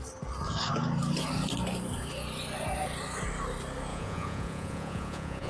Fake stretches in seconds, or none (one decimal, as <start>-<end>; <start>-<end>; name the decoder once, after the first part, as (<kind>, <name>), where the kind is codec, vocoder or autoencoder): 3.9-5.5 (vocoder, Vocos)